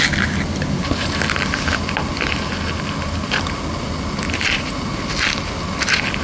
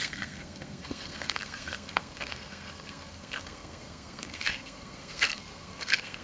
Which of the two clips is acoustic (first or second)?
first